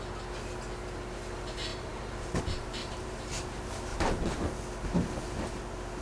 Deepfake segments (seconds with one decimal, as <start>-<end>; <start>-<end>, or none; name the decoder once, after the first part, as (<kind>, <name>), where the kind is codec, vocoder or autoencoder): 1.7-2.4 (vocoder, BigVGAN v2); 2.8-3.5; 3.9-4.6